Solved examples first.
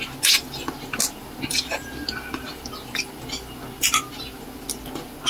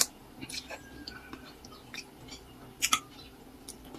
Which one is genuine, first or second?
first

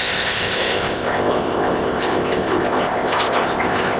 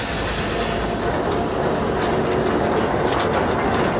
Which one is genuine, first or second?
second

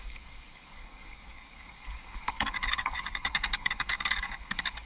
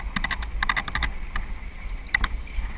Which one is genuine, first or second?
second